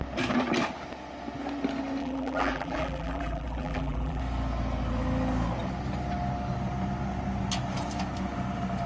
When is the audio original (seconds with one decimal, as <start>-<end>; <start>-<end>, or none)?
0.0-2.0; 4.2-8.9